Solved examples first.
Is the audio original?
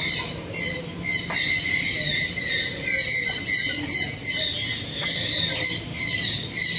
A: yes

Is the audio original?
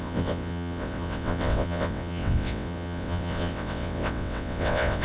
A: no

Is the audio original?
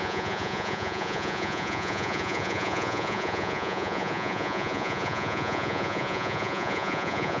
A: no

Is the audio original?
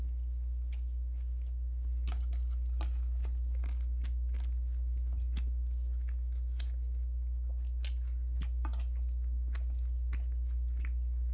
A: yes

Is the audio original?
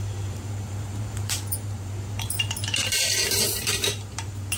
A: no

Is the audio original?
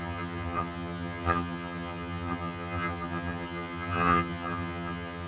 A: no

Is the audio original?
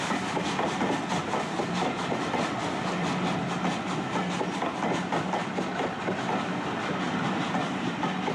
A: yes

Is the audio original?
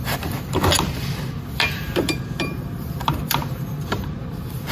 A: no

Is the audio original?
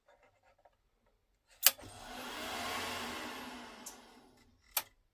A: yes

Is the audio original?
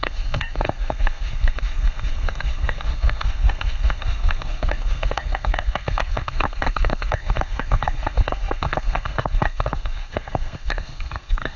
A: no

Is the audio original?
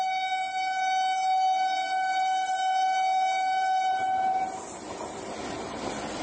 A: yes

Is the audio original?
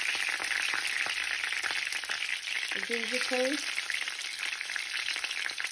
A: yes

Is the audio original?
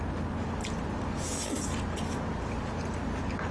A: yes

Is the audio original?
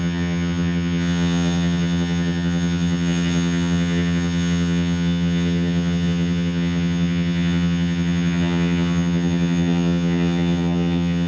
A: no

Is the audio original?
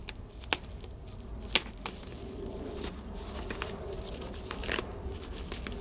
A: yes